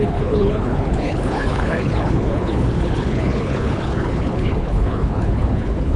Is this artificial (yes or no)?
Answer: yes